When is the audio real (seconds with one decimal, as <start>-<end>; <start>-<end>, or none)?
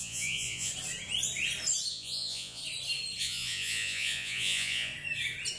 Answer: 0.7-1.9; 2.6-3.2; 4.9-5.6